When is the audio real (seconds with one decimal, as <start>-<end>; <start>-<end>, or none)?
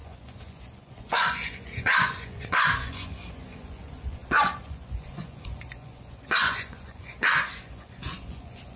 none